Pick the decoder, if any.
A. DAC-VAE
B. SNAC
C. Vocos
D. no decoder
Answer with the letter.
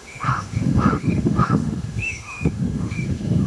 A